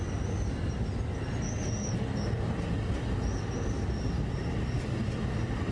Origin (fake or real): real